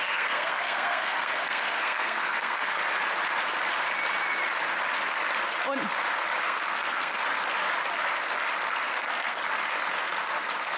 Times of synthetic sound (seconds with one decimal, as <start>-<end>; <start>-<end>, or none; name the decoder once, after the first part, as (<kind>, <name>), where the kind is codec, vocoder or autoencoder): 0.0-2.8 (codec, SNAC); 6.4-7.2; 8.7-9.4